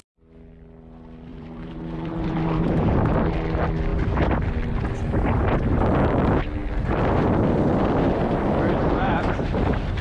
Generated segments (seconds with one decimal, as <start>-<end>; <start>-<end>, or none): 1.3-3.0; 8.8-10.0

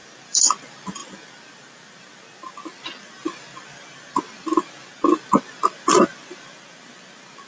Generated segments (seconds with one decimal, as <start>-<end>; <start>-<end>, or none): 0.0-0.6

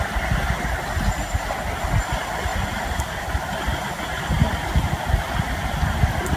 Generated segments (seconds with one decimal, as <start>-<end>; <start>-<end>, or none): none

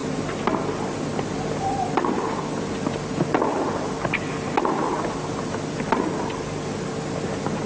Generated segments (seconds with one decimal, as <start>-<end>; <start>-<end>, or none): 0.0-2.7

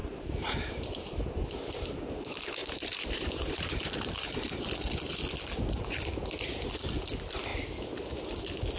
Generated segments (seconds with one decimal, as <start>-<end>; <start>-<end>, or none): 0.0-1.5; 2.6-4.6